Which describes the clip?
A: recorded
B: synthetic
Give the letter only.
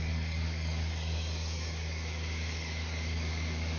B